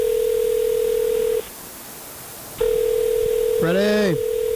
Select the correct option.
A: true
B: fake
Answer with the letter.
A